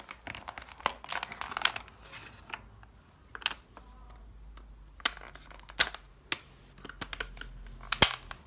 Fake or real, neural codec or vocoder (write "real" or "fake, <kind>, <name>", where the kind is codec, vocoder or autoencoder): real